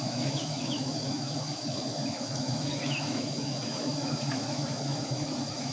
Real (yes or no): no